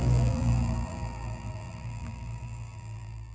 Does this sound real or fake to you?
fake